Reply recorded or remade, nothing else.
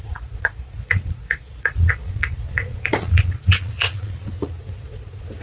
remade